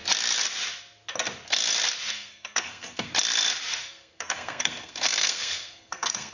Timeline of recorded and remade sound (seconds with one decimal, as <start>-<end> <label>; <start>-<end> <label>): 0.0-2.1 recorded; 2.1-3.1 remade; 3.1-3.7 recorded; 3.7-6.3 remade